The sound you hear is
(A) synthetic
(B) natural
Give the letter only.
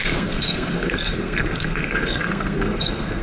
A